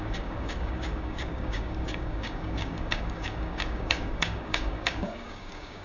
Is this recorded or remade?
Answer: remade